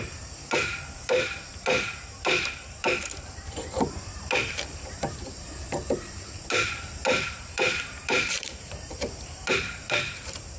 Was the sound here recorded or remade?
remade